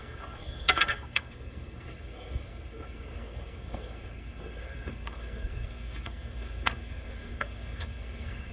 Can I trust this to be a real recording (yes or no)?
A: no